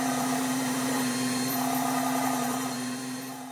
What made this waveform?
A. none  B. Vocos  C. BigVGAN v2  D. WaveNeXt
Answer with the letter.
C